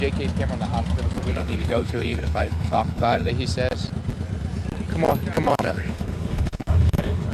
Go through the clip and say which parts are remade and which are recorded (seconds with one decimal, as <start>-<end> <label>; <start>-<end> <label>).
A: 0.0-1.3 recorded; 1.3-3.3 remade; 3.3-5.5 recorded; 5.5-7.3 remade